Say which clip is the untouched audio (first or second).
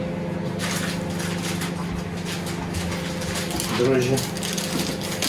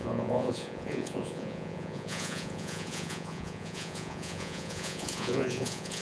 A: first